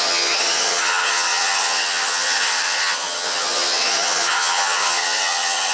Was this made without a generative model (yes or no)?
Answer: no